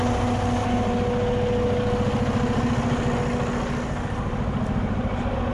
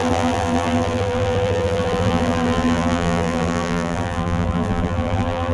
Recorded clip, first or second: first